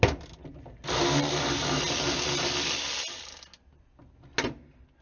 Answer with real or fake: real